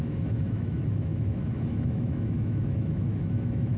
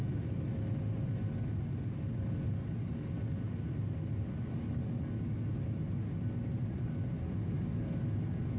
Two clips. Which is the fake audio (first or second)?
first